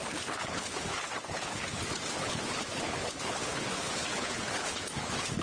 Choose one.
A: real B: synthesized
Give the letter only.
B